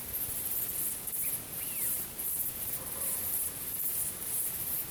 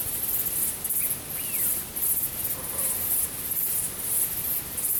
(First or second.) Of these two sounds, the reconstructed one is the first